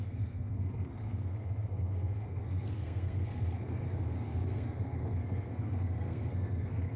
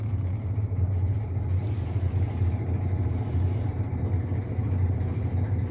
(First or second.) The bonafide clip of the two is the second